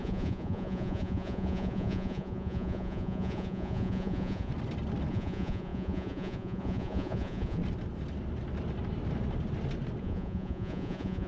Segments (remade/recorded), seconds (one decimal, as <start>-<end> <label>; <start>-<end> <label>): 0.0-4.5 remade; 4.5-5.1 recorded; 5.1-7.6 remade; 7.6-10.0 recorded; 10.0-11.3 remade